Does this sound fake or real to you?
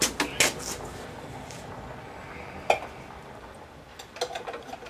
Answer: real